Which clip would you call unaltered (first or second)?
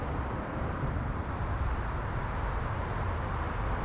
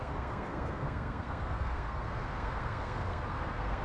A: first